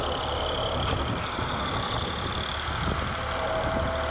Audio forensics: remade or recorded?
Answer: recorded